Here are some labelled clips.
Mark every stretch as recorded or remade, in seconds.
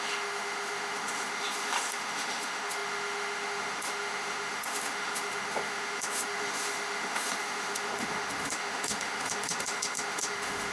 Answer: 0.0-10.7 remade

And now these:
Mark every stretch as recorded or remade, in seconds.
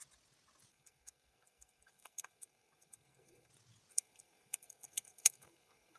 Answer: 0.0-0.7 recorded; 0.7-3.5 remade; 3.5-3.9 recorded; 3.9-6.0 remade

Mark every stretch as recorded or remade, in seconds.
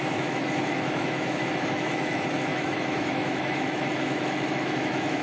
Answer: 0.0-5.2 remade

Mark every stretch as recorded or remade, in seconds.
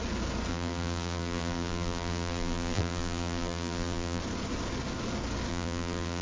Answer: 0.0-0.5 recorded; 0.5-4.2 remade; 4.2-5.5 recorded; 5.5-6.2 remade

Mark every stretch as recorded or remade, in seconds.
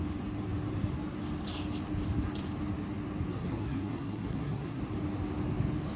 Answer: 0.0-3.3 recorded; 3.3-4.8 remade; 4.8-6.0 recorded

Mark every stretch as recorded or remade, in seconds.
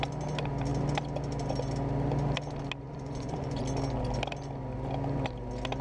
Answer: 0.0-2.8 recorded; 2.8-3.6 remade; 3.6-5.8 recorded